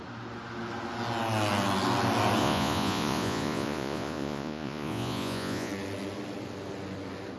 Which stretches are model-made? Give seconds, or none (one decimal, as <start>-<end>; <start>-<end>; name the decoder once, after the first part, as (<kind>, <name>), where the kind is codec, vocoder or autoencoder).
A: 2.4-5.7 (vocoder, Vocos)